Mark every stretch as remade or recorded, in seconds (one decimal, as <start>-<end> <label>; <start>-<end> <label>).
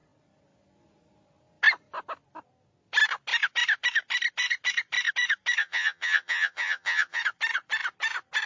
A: 0.0-5.6 recorded; 5.6-7.2 remade; 7.2-8.5 recorded